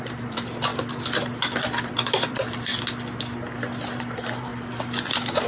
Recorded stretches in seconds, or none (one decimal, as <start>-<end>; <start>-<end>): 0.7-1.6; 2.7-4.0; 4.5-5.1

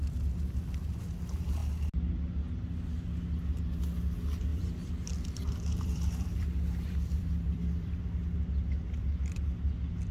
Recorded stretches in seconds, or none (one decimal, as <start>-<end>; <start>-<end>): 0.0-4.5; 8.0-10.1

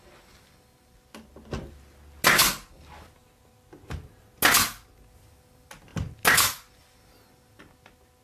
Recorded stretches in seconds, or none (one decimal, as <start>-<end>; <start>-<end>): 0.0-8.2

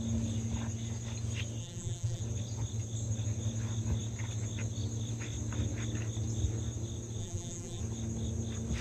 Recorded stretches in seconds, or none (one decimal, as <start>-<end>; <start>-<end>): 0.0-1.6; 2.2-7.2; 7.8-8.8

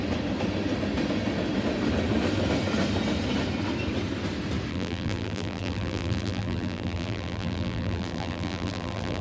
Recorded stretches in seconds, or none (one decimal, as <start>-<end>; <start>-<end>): 0.0-4.7

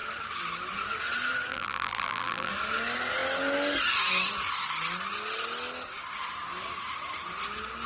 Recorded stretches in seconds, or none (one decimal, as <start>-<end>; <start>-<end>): 0.0-1.5; 2.5-7.9

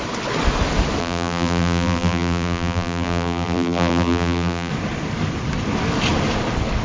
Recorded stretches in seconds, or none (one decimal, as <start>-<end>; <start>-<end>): 0.0-1.0; 4.7-6.8

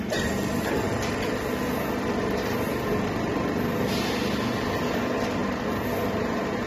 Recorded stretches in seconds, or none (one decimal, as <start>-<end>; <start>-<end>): 0.0-6.7